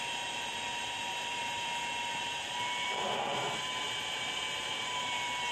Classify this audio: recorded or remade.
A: remade